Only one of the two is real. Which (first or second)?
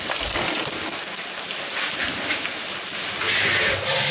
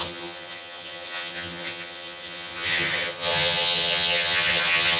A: first